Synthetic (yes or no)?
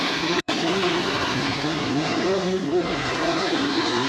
yes